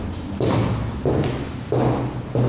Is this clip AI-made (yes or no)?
no